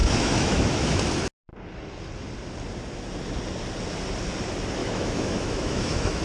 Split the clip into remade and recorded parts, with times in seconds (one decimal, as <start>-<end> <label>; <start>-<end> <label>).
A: 0.0-1.0 remade; 1.0-4.8 recorded; 4.8-6.2 remade

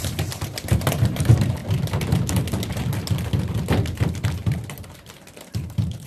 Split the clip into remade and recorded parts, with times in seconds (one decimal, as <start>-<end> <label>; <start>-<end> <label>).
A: 0.0-1.6 remade; 1.6-5.3 recorded; 5.3-6.1 remade

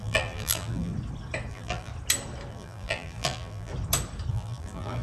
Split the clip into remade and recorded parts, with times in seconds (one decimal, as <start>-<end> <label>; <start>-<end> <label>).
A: 0.0-0.9 remade; 0.9-1.5 recorded; 1.5-1.9 remade; 1.9-2.5 recorded; 2.5-3.7 remade; 3.7-4.3 recorded; 4.3-5.0 remade

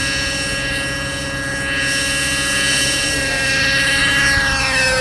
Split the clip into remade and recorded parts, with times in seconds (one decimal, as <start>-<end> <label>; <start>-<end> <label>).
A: 0.0-5.0 recorded

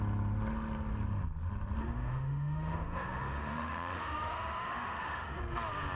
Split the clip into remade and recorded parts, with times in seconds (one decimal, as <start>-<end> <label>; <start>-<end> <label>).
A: 0.0-1.8 recorded; 1.8-5.4 remade; 5.4-6.0 recorded

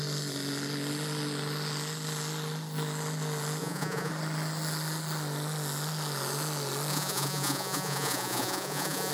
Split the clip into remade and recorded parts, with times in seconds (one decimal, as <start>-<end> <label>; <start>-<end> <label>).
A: 0.0-3.6 recorded; 3.6-4.1 remade; 4.1-6.9 recorded; 6.9-9.1 remade

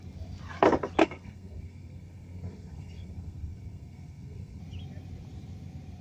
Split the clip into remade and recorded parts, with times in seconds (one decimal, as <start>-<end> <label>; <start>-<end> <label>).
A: 0.0-1.0 recorded; 1.0-4.6 remade; 4.6-6.0 recorded

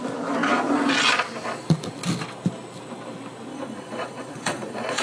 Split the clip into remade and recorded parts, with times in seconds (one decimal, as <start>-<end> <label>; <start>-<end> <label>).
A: 0.0-3.5 recorded; 3.5-5.0 remade